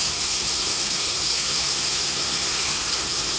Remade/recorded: remade